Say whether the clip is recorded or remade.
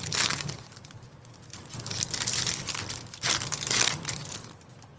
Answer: remade